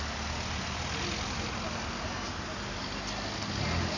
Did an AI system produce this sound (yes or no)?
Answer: no